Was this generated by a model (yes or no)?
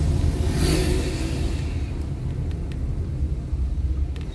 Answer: no